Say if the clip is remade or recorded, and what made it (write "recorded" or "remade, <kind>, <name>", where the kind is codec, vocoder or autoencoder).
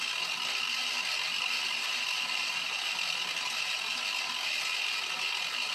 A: recorded